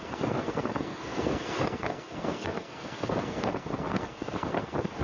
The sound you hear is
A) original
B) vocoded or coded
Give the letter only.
B